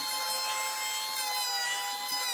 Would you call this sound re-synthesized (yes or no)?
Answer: no